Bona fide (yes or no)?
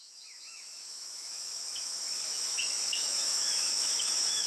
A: no